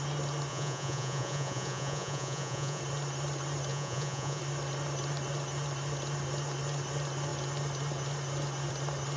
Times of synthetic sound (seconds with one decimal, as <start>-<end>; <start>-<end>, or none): 0.5-2.8; 3.7-4.4